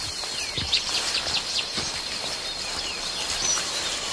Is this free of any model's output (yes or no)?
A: yes